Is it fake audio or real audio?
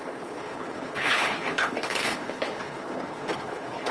fake